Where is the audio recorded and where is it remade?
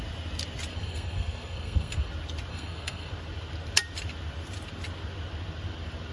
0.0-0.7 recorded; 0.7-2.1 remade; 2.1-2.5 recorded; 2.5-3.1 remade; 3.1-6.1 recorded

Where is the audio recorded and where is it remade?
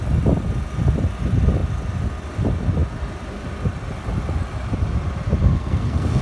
0.0-5.4 recorded; 5.4-6.2 remade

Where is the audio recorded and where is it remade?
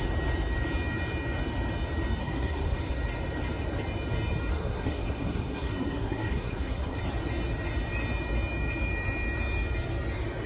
0.0-2.2 recorded; 2.2-2.8 remade; 2.8-4.5 recorded; 4.5-7.0 remade; 7.0-10.5 recorded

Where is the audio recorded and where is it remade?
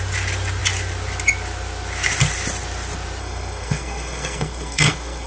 0.0-3.2 recorded; 3.2-5.3 remade